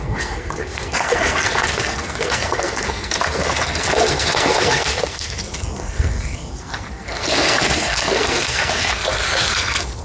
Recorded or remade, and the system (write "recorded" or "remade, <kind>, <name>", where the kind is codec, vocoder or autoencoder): remade, codec, SNAC